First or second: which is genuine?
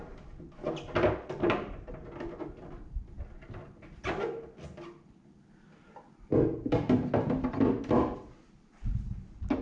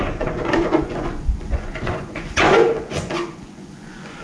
first